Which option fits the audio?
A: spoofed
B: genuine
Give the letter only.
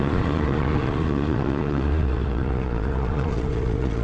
A